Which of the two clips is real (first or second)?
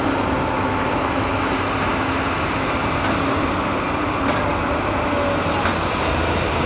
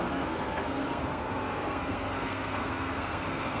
first